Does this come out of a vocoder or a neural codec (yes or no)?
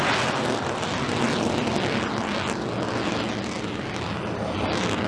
no